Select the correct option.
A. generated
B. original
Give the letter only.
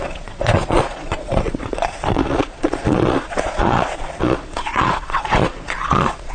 A